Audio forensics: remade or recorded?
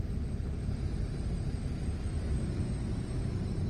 remade